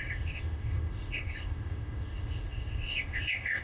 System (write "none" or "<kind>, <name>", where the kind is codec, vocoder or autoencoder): codec, ZipCodec